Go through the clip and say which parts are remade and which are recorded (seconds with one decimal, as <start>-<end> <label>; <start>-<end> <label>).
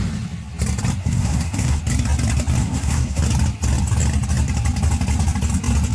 0.0-1.0 recorded; 1.0-1.8 remade; 1.8-2.6 recorded; 2.6-3.2 remade; 3.2-5.9 recorded